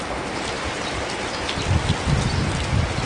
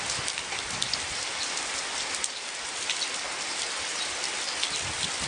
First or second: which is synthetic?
second